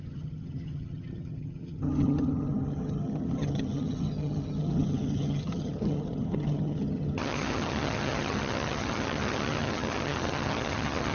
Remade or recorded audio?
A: remade